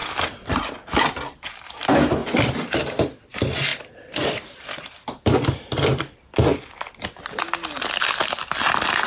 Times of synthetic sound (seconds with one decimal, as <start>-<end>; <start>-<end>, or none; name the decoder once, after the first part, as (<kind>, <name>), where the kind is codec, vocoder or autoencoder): 0.0-0.5 (vocoder, BigVGAN v2); 2.2-2.9; 3.7-8.4